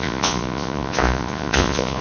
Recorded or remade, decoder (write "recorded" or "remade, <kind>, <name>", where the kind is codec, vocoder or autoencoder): remade, vocoder, Vocos